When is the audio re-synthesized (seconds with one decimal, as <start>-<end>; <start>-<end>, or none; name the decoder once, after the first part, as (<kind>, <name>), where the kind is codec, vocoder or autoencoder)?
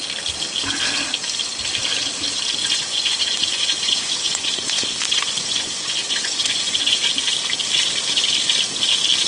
2.6-7.1 (vocoder, Vocos)